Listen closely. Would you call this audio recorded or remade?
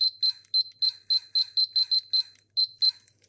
recorded